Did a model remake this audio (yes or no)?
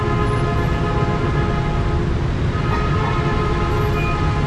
no